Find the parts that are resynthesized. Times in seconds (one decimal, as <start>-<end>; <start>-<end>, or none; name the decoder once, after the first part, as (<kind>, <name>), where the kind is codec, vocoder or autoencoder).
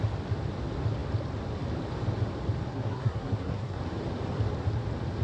2.7-3.8 (codec, SNAC)